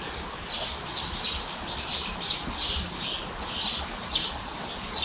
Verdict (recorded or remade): recorded